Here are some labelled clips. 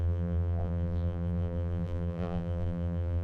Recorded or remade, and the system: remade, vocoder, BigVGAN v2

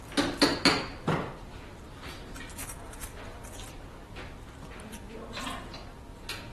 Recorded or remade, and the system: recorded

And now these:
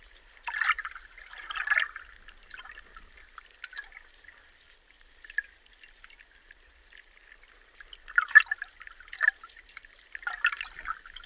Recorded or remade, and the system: recorded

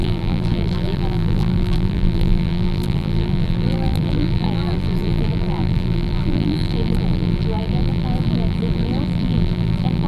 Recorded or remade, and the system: remade, vocoder, BigVGAN v2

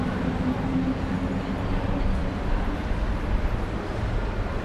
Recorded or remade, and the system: recorded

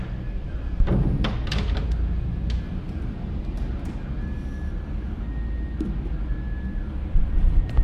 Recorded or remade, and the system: recorded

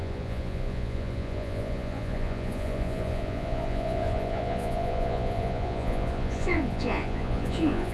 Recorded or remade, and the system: remade, vocoder, Vocos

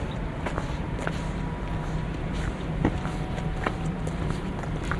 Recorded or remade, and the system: recorded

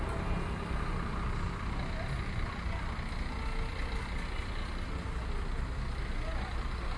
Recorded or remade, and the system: recorded